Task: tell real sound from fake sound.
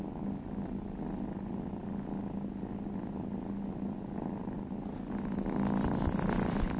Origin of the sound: real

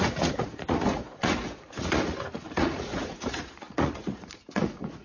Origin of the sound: fake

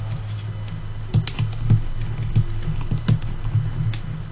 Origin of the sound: real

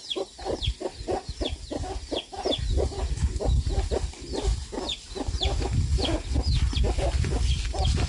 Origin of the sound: real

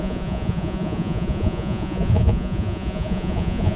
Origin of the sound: fake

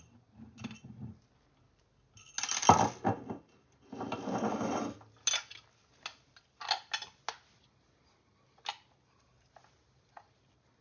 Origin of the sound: real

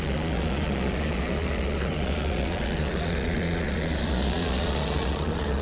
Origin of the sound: fake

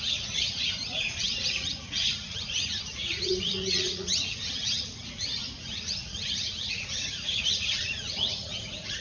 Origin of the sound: fake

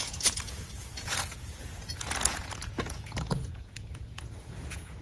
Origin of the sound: fake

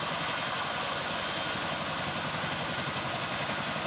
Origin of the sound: fake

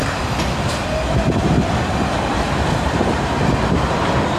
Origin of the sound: real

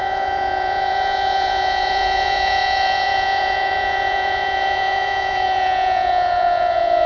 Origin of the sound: fake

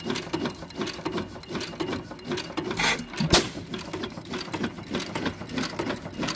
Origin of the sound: real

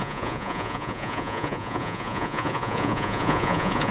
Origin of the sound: fake